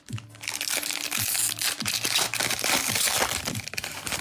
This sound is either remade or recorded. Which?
recorded